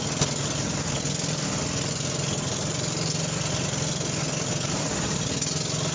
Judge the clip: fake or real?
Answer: real